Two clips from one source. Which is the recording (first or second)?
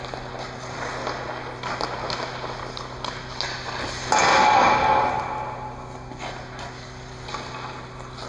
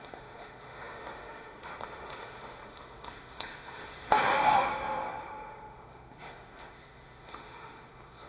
first